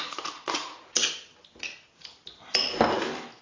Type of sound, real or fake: real